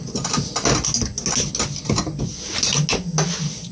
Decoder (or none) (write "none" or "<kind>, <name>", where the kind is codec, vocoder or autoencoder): none